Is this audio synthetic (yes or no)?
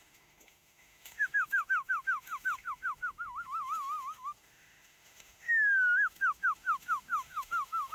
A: yes